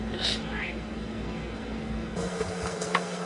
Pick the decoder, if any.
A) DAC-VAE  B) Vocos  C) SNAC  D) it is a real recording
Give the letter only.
C